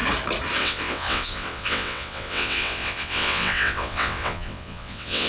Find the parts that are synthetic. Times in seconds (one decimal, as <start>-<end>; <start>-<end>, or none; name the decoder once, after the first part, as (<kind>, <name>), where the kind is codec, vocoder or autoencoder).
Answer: 0.6-5.3 (vocoder, WaveNeXt)